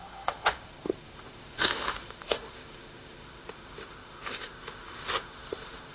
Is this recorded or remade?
remade